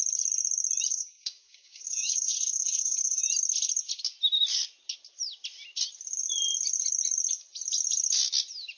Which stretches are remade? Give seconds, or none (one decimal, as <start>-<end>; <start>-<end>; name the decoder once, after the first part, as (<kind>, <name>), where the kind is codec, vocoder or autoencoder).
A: 0.9-3.2 (codec, DAC)